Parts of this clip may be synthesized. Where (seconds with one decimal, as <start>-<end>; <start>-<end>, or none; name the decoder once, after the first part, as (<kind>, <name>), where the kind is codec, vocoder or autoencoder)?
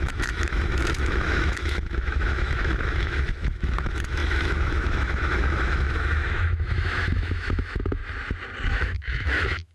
0.0-8.0 (autoencoder, DAC-VAE); 8.7-9.7